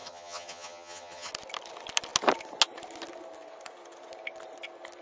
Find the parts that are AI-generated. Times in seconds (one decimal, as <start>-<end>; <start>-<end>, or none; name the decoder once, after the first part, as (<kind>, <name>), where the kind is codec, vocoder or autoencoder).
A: 0.0-1.3 (vocoder, HiFi-GAN)